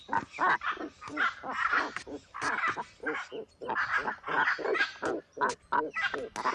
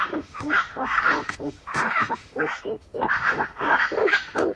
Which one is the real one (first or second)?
first